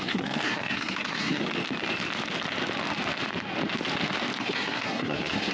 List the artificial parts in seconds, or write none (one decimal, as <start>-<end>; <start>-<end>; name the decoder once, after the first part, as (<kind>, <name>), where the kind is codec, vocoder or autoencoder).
0.0-1.5 (codec, SNAC); 4.4-5.5

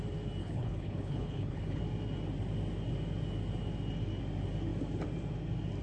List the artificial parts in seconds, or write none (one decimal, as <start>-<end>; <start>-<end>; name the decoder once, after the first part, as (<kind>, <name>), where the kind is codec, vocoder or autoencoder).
0.4-1.8 (codec, HILCodec)

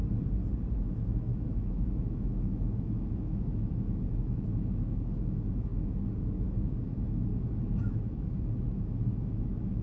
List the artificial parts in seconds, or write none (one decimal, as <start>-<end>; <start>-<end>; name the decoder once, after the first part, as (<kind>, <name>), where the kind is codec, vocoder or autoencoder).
0.7-7.3 (autoencoder, DAC-VAE); 7.8-9.8